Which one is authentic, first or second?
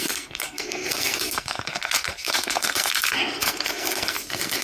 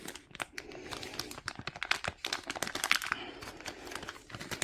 second